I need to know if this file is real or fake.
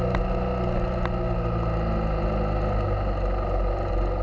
real